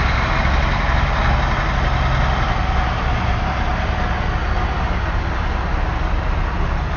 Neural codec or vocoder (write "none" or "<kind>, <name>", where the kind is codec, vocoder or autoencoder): none